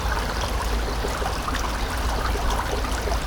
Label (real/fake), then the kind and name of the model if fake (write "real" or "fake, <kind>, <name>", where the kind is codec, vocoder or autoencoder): real